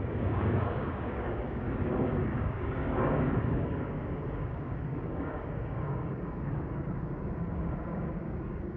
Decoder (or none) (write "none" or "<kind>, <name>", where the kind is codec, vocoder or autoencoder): codec, DAC